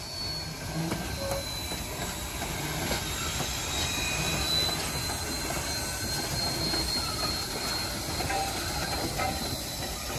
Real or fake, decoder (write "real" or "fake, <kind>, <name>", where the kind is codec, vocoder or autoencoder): real